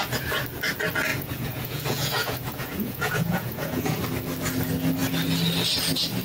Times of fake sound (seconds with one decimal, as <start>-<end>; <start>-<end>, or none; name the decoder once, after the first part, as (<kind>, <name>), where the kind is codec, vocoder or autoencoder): 1.1-4.0 (vocoder, Vocos)